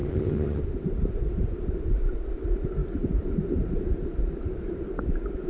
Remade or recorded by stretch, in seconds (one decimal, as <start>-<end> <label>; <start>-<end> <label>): 0.0-0.6 remade; 0.6-5.5 recorded